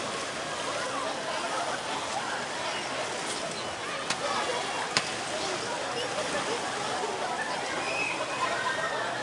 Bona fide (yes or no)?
yes